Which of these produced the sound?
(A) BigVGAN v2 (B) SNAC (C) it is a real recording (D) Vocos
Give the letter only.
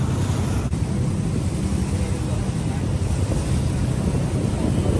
C